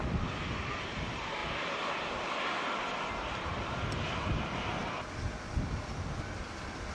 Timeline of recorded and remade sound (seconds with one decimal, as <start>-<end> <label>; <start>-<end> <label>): 0.0-6.9 recorded